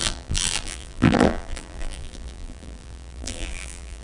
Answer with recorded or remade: remade